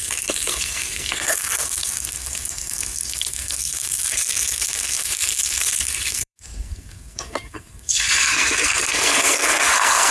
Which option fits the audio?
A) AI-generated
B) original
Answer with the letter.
A